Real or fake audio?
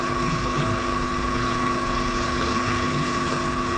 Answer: fake